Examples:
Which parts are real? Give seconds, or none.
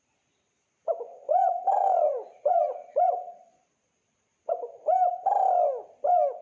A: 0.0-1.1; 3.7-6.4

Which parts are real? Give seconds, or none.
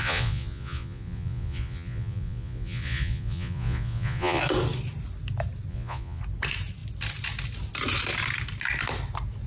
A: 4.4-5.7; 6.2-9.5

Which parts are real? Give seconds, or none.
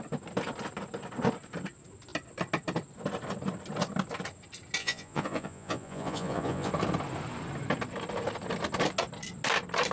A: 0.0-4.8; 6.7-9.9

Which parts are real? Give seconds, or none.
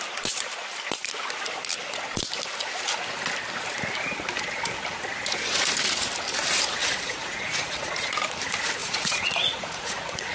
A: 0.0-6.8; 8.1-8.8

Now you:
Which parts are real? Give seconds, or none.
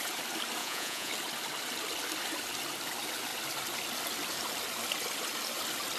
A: 0.0-0.6; 1.1-6.0